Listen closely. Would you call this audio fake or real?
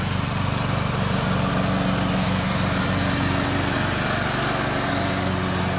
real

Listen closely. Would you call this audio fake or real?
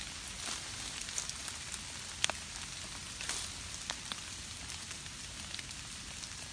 real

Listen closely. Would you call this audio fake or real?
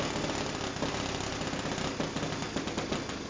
real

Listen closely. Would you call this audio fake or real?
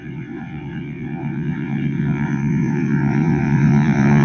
fake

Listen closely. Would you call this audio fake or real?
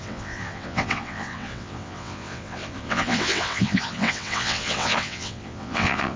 fake